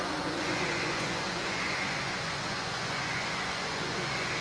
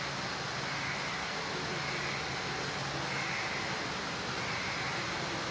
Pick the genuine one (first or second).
second